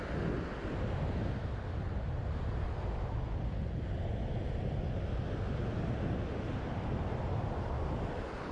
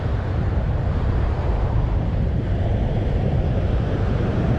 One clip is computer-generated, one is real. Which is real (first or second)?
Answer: first